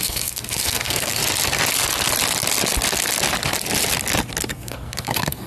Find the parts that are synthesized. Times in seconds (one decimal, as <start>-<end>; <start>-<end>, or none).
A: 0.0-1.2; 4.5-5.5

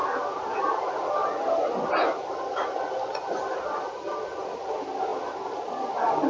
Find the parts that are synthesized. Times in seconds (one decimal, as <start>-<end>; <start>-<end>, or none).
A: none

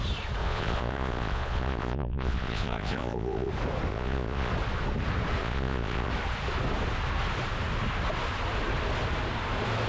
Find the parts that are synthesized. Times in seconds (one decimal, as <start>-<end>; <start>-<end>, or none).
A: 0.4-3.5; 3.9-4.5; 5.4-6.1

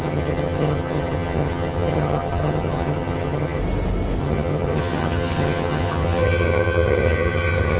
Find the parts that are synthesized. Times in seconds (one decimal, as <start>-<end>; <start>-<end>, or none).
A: 0.0-3.6; 4.2-7.8

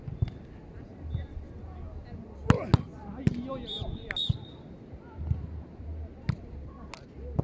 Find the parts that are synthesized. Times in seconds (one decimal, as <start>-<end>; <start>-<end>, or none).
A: none